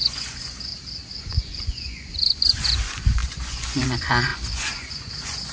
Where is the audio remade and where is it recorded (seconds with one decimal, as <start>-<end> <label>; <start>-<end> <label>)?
0.0-0.7 remade; 0.7-1.2 recorded; 1.2-5.5 remade